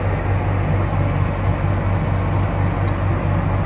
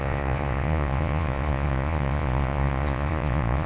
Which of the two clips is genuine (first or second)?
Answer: first